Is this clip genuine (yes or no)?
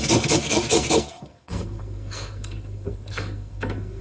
no